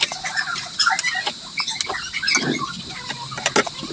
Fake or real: real